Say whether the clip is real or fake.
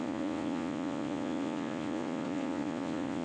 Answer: fake